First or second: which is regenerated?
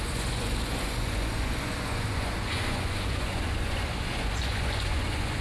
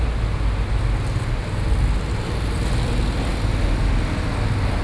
first